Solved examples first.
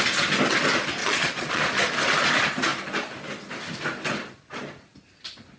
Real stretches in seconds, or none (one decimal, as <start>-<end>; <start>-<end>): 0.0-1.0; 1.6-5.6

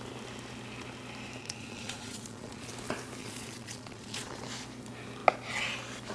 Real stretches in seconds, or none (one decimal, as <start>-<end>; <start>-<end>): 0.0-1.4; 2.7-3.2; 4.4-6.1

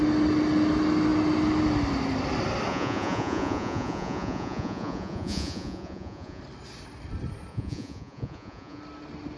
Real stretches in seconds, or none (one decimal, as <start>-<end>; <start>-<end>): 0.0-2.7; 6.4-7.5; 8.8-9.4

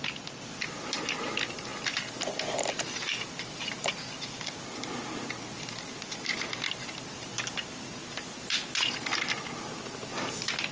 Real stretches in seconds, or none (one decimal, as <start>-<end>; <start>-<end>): 0.0-10.7

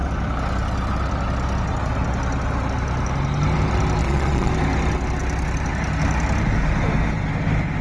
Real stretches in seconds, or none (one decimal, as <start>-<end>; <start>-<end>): 0.0-4.0; 4.5-7.8

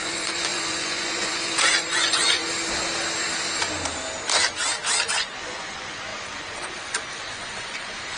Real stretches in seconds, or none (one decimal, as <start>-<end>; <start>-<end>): 2.4-5.1

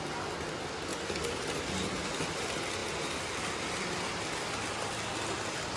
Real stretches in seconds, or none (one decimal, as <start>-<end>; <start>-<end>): 0.0-5.8